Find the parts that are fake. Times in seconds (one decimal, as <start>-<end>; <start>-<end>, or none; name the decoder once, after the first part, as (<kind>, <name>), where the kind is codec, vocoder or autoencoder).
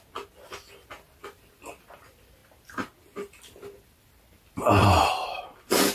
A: 4.8-5.4 (vocoder, BigVGAN v2)